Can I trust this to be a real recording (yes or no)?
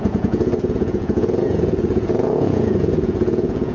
no